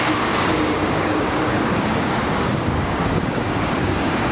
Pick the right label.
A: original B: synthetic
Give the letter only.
B